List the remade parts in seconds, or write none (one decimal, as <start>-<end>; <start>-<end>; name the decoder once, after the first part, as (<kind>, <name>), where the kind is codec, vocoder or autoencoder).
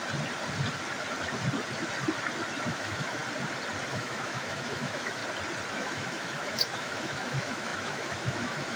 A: 2.7-3.2 (autoencoder, DAC-VAE); 3.9-5.2; 5.7-8.8